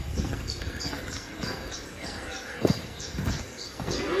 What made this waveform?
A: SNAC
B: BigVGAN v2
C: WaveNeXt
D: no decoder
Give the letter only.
A